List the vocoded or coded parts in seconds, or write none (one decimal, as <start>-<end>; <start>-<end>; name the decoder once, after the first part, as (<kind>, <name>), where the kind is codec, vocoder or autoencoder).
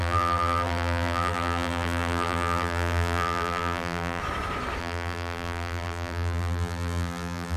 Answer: 0.0-4.2 (vocoder, BigVGAN v2); 4.8-7.6